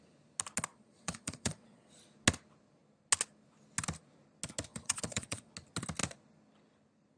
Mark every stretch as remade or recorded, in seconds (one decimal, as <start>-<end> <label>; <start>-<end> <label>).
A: 0.0-0.7 recorded; 0.7-1.9 remade; 1.9-4.7 recorded; 4.7-5.5 remade; 5.5-7.2 recorded